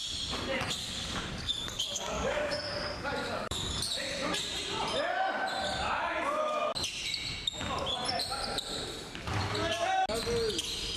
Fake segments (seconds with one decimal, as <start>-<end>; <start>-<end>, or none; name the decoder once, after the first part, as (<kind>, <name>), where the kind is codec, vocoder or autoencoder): 0.8-3.8 (codec, DAC)